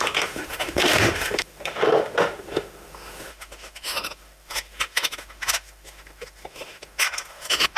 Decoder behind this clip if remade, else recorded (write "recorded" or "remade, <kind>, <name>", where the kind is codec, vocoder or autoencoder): remade, autoencoder, DAC-VAE